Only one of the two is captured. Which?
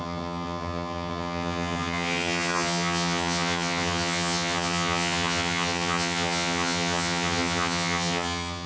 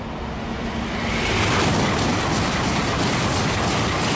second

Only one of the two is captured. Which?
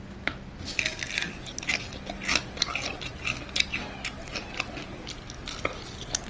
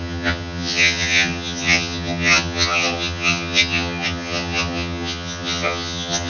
first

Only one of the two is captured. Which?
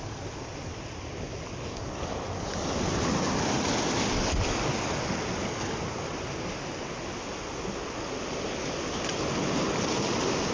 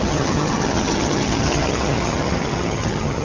first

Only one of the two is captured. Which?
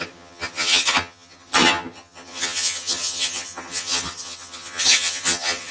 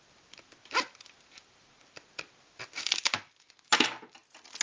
second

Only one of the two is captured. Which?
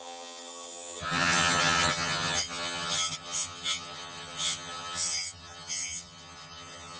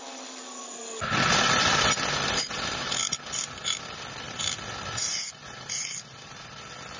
second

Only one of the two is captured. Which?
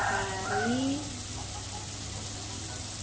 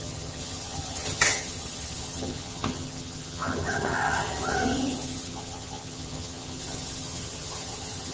first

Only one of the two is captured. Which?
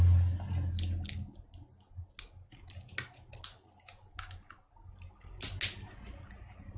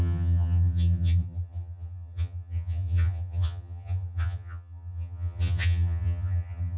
first